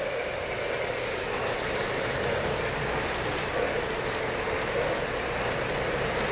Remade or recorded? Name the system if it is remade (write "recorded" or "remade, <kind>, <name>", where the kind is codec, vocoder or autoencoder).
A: recorded